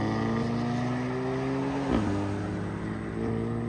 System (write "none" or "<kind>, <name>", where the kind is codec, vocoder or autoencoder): none